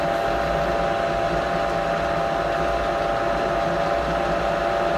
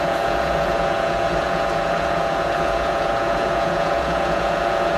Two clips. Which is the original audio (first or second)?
first